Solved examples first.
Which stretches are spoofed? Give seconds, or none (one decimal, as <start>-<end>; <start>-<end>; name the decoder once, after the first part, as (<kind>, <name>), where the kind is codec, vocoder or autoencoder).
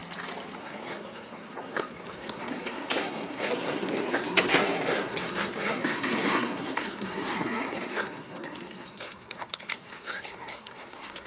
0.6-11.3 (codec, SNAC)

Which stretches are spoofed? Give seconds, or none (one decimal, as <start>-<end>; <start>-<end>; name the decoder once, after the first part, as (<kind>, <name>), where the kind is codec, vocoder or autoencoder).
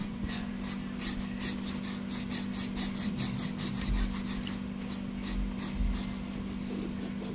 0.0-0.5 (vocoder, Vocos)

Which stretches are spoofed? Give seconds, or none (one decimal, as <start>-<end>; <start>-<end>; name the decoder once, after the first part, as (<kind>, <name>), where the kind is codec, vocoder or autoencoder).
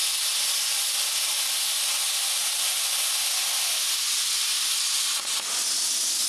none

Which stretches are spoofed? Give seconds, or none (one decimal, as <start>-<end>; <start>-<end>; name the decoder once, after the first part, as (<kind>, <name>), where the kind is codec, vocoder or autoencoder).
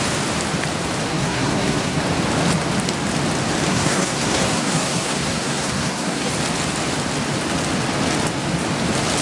1.1-2.0 (codec, SNAC); 3.7-6.3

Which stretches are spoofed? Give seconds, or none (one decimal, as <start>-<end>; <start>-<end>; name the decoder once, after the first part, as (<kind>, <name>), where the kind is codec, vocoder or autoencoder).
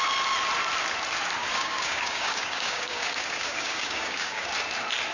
1.4-4.5 (codec, DAC)